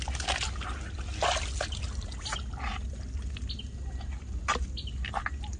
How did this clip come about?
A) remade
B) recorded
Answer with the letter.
B